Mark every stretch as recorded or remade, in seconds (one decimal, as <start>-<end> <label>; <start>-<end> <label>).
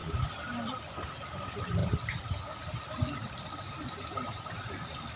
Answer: 0.0-5.2 recorded